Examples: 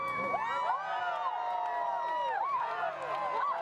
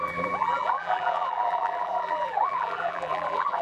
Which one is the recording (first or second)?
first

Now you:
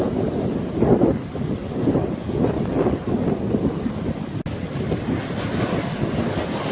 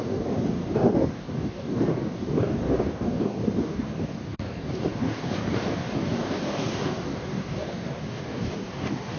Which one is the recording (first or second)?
first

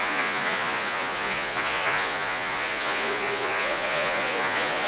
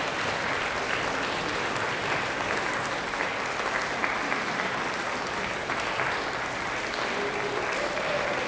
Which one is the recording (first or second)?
second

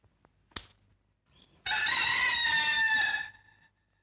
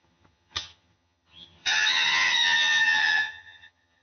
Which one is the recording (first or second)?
first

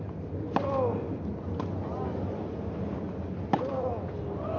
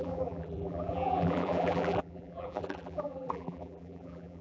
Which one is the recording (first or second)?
first